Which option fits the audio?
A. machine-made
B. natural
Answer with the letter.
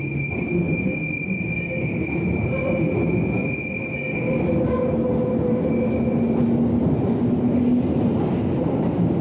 B